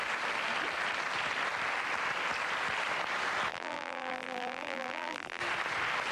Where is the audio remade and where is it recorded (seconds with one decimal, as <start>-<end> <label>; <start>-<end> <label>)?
0.0-3.5 recorded; 3.5-5.4 remade; 5.4-6.1 recorded